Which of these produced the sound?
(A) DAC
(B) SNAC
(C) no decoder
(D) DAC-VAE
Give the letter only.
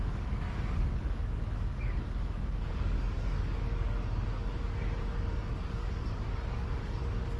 A